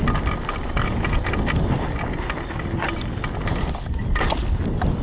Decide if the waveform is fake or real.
real